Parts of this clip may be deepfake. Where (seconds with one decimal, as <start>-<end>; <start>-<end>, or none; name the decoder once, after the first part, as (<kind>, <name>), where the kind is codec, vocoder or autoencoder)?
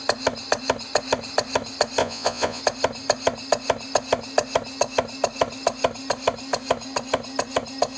2.0-2.6 (vocoder, Vocos)